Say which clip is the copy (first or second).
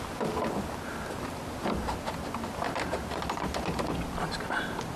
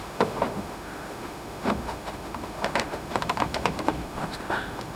second